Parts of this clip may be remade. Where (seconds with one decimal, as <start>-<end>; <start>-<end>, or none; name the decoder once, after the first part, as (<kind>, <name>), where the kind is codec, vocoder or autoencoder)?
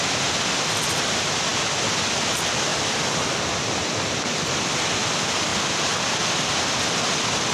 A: none